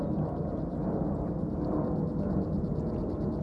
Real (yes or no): yes